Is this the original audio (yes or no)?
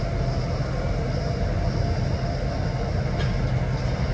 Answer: yes